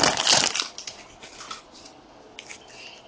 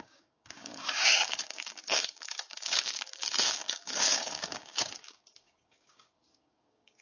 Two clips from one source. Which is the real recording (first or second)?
first